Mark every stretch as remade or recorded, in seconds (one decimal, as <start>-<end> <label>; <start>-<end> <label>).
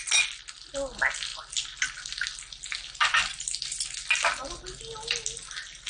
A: 0.0-5.9 recorded